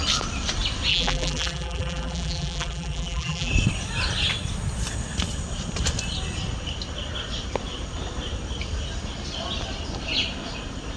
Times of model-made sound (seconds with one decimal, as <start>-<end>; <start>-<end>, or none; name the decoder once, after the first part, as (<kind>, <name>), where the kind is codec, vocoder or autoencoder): 0.9-3.5 (vocoder, BigVGAN v2)